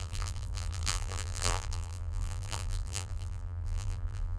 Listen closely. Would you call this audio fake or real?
fake